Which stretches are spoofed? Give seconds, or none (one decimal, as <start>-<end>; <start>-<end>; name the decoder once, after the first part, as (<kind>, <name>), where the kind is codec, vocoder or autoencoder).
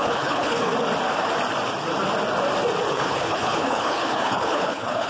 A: 0.0-0.7 (codec, HILCodec); 2.9-5.1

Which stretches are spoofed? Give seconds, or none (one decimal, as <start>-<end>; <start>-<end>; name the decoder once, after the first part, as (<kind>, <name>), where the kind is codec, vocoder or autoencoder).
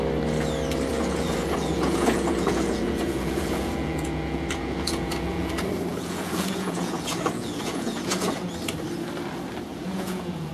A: 0.9-5.5 (vocoder, Vocos); 5.9-8.5; 9.7-10.5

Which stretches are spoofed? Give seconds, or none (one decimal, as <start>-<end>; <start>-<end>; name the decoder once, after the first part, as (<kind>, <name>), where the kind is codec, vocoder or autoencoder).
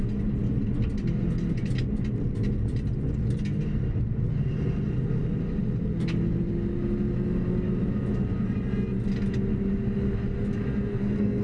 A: 10.9-11.4 (codec, SNAC)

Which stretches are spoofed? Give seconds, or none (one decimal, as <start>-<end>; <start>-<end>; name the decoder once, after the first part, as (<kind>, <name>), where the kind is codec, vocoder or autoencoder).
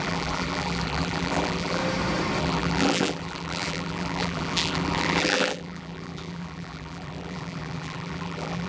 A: 0.0-1.8 (vocoder, BigVGAN v2); 2.4-8.7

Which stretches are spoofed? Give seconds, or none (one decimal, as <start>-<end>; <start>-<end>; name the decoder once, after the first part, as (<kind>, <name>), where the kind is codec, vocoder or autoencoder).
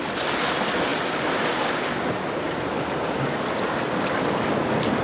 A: none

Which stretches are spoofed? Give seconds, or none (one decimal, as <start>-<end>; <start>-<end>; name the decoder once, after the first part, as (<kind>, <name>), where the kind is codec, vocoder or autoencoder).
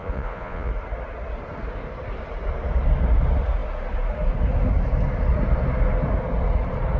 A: 0.0-0.7 (vocoder, Vocos)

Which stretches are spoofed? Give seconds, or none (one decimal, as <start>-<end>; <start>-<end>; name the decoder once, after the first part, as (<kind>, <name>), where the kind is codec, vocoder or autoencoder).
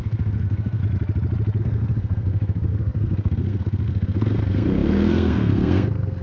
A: 0.0-0.8 (codec, SNAC); 1.6-6.2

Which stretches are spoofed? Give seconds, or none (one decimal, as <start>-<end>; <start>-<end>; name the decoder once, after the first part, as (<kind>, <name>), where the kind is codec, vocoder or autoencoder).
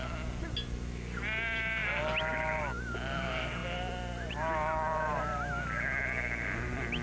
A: 3.6-4.3 (vocoder, BigVGAN v2)